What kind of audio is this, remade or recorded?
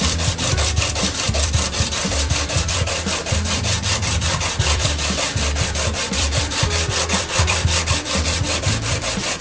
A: remade